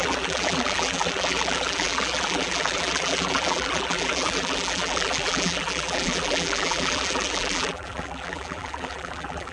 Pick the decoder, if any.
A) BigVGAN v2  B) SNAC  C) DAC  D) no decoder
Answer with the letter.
A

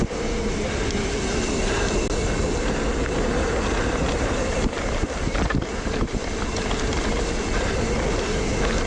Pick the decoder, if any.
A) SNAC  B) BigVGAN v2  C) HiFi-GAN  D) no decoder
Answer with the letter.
D